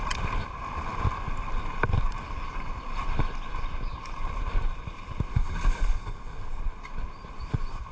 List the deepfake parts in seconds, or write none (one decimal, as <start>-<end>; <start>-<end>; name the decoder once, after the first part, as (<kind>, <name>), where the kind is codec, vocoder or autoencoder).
5.3-6.6 (codec, SNAC)